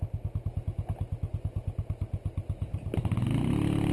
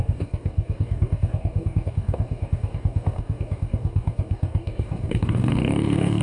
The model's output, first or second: second